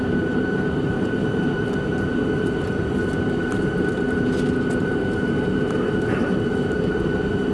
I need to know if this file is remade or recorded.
remade